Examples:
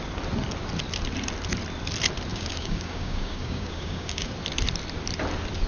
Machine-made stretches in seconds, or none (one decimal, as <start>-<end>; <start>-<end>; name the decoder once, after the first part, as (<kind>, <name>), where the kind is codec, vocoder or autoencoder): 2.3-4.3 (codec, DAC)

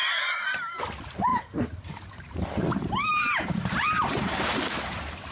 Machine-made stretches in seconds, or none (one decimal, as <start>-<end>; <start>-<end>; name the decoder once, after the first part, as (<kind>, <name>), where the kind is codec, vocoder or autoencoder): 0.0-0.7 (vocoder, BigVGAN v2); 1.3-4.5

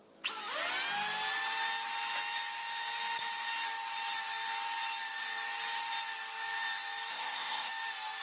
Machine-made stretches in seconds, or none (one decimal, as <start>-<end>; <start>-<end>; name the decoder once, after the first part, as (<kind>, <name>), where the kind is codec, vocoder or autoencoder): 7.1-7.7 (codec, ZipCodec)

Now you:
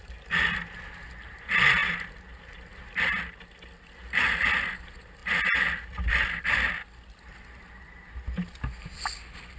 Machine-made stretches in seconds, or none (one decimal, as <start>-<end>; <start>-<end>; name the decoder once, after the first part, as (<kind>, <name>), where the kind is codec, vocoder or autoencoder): none

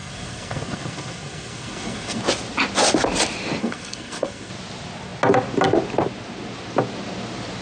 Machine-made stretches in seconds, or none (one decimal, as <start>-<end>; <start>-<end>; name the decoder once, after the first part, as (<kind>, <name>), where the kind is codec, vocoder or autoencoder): 0.0-2.2 (codec, SNAC); 3.6-4.5

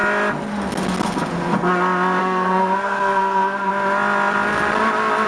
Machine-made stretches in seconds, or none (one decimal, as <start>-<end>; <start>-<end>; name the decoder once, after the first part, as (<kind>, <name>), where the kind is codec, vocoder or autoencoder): 2.2-3.7 (codec, SNAC)

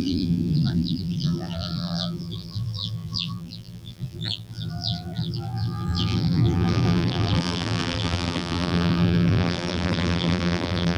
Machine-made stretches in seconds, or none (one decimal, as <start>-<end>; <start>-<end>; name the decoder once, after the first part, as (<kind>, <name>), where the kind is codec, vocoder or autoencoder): 0.0-11.0 (vocoder, BigVGAN v2)

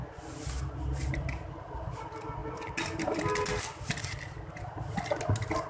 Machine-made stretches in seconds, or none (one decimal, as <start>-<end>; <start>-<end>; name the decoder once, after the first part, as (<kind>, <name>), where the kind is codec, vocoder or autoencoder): none